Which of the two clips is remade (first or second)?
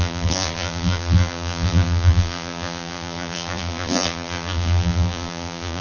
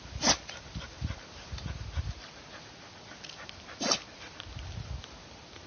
first